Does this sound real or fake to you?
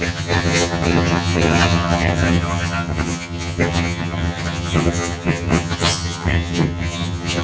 fake